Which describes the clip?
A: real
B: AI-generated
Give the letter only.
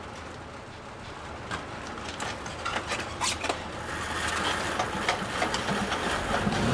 A